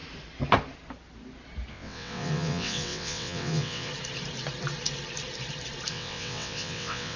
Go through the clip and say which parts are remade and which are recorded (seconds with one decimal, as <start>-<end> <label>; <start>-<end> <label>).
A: 0.0-1.7 recorded; 1.7-3.9 remade; 3.9-5.9 recorded; 5.9-7.2 remade